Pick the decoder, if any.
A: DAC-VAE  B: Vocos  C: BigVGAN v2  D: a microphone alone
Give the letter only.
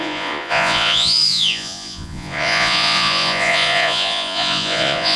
B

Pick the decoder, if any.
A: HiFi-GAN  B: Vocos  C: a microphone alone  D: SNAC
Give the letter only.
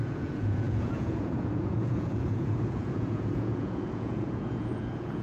B